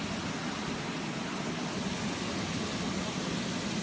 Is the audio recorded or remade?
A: recorded